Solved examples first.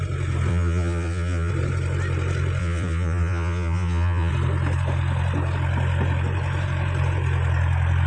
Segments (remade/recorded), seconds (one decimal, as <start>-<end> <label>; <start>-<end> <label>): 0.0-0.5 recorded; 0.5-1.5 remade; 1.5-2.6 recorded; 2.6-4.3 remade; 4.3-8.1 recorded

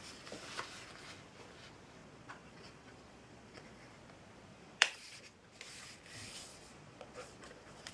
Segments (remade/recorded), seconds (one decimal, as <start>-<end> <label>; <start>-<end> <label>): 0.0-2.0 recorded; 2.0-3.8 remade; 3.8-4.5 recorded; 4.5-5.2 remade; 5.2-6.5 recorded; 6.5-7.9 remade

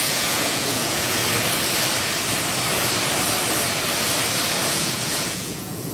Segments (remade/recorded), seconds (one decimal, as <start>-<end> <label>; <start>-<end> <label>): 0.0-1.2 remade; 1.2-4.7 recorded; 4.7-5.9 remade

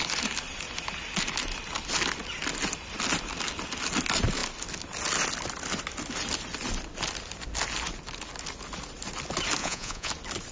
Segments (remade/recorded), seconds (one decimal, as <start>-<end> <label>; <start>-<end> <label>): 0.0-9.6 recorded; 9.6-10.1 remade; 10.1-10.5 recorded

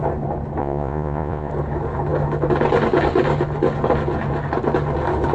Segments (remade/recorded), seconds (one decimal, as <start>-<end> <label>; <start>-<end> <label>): 0.0-0.6 recorded; 0.6-1.5 remade; 1.5-5.3 recorded